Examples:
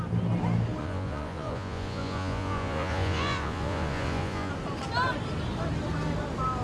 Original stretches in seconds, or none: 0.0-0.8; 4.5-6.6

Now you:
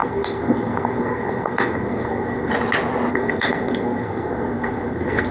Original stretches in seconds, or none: 2.5-3.1

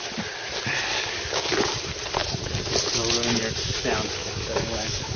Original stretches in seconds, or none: 0.0-0.9; 1.6-4.2

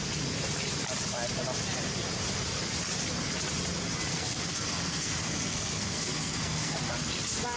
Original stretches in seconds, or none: 0.0-4.1; 6.8-7.6

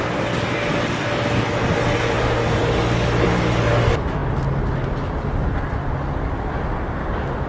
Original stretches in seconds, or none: 0.0-7.5